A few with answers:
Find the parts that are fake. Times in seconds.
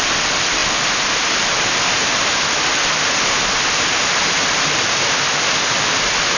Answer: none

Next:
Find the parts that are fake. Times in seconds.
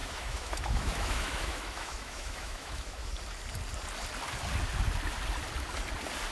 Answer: 0.0-3.1 (autoencoder, DAC-VAE)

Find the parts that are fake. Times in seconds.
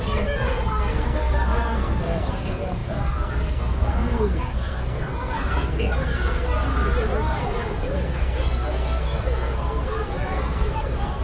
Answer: 0.0-6.7 (codec, SNAC); 7.4-11.2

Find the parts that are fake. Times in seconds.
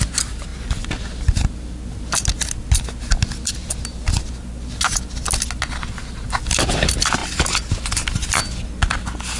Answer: none